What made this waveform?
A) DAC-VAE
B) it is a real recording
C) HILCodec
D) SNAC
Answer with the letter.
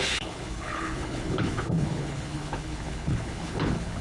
C